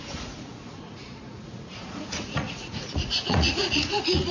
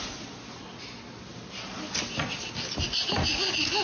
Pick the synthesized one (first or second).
first